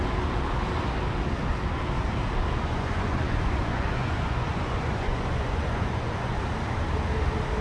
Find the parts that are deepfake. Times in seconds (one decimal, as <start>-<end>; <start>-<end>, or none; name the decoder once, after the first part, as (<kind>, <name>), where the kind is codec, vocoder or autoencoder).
2.6-6.4 (vocoder, Vocos)